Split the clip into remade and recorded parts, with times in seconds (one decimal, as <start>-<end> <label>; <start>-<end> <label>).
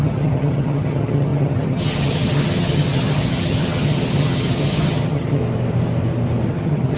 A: 0.0-5.4 remade; 5.4-6.5 recorded; 6.5-7.0 remade